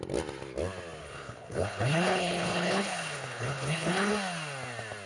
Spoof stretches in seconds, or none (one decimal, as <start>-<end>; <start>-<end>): 1.0-4.1